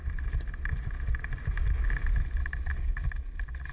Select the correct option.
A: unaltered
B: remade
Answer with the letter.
A